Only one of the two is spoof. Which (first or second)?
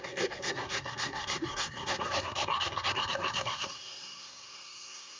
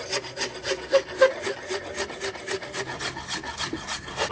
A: first